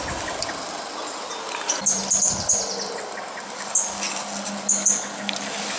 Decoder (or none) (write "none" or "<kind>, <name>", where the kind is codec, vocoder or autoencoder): none